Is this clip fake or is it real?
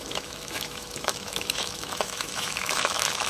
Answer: fake